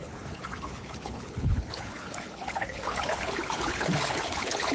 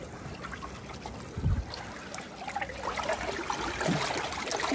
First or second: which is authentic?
second